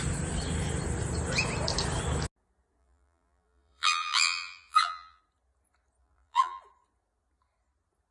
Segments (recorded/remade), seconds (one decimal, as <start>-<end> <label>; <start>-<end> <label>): 0.0-2.8 recorded; 2.8-5.2 remade; 5.2-6.0 recorded; 6.0-6.6 remade; 6.6-8.1 recorded

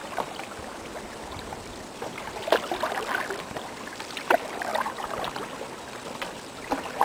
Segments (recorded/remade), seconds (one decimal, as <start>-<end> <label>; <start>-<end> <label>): 0.0-7.0 recorded

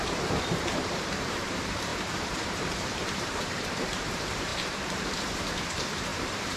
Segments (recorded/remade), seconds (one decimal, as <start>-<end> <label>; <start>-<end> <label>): 0.0-6.6 remade

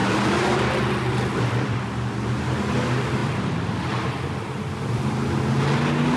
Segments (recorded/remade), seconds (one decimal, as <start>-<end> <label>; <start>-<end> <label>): 0.0-1.8 remade; 1.8-3.2 recorded; 3.2-5.0 remade; 5.0-6.2 recorded

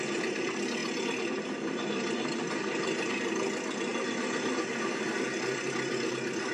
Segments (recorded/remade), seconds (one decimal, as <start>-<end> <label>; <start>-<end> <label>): 0.0-0.8 recorded; 0.8-3.1 remade; 3.1-6.5 recorded

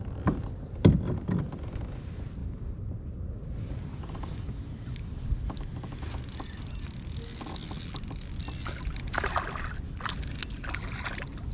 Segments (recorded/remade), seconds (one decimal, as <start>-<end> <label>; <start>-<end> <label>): 0.0-2.4 recorded; 2.4-5.1 remade; 5.1-11.5 recorded

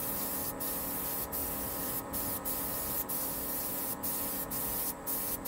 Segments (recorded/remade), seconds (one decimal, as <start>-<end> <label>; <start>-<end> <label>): 0.0-5.5 recorded